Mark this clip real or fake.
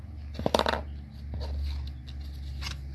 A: real